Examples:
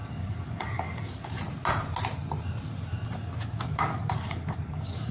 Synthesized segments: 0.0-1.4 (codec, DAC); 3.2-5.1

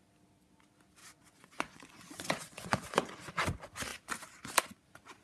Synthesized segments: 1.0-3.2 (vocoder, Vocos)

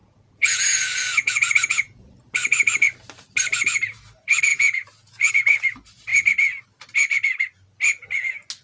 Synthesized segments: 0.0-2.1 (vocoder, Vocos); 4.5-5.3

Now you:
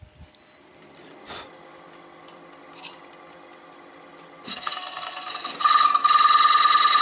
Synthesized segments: 4.5-5.3 (codec, SNAC)